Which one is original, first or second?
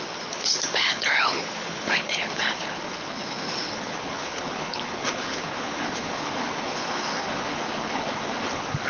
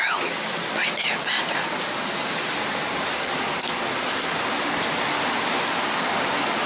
second